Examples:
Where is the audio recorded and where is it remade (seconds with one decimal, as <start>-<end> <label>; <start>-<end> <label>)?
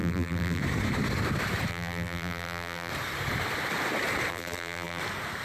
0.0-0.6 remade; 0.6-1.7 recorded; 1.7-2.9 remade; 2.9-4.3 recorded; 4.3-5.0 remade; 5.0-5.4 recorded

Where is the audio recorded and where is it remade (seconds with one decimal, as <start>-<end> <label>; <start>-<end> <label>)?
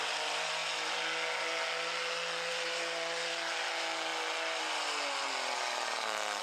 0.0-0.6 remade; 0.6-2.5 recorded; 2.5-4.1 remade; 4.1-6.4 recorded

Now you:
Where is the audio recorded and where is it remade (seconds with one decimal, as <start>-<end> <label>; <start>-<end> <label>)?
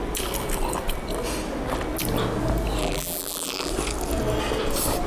0.0-2.8 recorded; 2.8-3.7 remade; 3.7-5.1 recorded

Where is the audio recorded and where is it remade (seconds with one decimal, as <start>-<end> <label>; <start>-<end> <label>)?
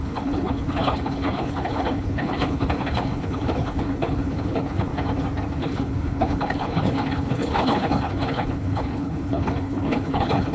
0.0-4.9 remade; 4.9-5.6 recorded; 5.6-10.5 remade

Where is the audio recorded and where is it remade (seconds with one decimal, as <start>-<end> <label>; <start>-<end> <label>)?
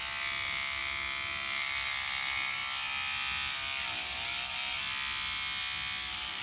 0.0-6.4 recorded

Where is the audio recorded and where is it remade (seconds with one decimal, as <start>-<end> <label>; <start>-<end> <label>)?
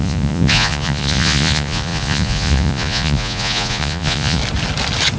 0.0-4.4 remade; 4.4-5.2 recorded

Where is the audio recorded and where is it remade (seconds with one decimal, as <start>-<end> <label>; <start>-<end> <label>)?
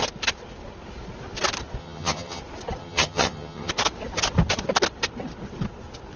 0.0-1.8 recorded; 1.8-2.4 remade; 2.4-2.8 recorded; 2.8-3.7 remade; 3.7-6.2 recorded